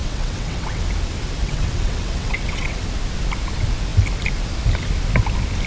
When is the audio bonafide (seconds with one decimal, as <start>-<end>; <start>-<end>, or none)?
0.8-1.4; 2.8-5.7